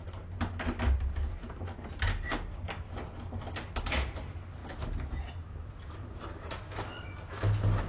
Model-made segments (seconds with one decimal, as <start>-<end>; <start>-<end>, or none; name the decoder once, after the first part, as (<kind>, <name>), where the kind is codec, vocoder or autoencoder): 2.1-2.8 (codec, DAC)